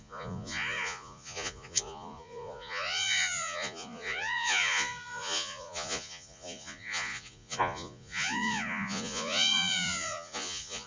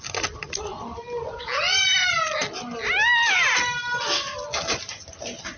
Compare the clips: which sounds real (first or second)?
second